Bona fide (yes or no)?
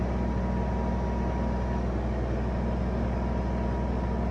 yes